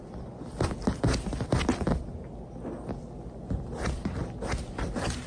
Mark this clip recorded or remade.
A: recorded